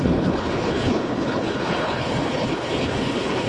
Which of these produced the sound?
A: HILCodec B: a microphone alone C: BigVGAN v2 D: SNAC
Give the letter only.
A